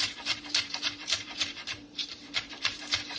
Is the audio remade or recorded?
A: remade